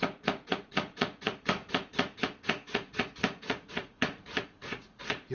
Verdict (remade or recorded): remade